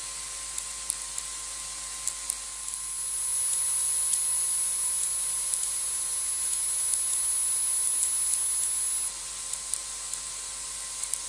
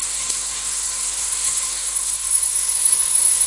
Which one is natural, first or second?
first